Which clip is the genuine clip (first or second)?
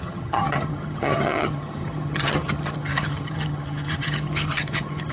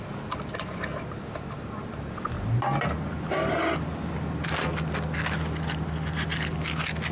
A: second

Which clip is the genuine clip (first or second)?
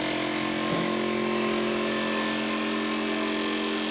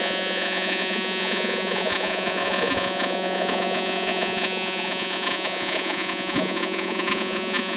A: first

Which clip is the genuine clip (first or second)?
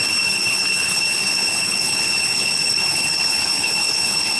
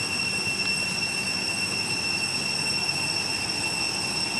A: second